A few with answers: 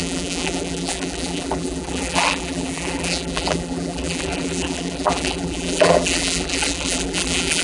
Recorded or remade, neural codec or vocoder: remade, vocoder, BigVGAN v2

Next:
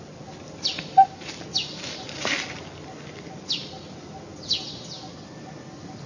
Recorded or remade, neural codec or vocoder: recorded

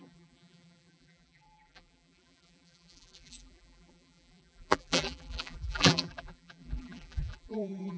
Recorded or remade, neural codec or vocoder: remade, vocoder, BigVGAN v2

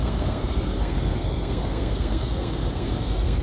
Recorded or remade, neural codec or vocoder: remade, codec, SNAC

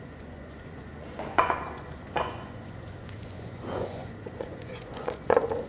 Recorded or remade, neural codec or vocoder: remade, vocoder, Vocos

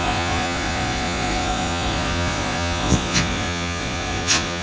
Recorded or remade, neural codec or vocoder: remade, vocoder, Vocos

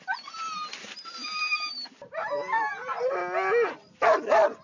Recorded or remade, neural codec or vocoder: recorded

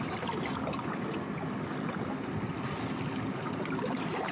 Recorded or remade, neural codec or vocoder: recorded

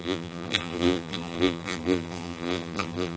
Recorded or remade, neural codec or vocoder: remade, vocoder, BigVGAN v2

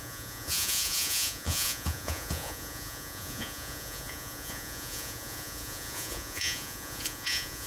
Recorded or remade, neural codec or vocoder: remade, vocoder, Vocos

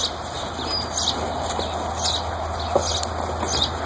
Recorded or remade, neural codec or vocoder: recorded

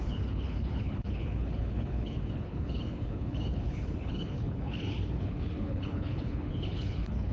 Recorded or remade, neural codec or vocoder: remade, codec, HILCodec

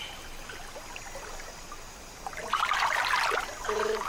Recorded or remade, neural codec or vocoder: recorded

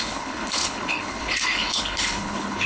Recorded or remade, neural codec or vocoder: remade, codec, HILCodec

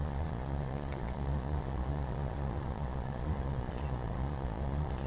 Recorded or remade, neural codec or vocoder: remade, vocoder, Vocos